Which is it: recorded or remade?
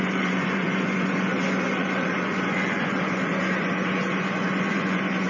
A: remade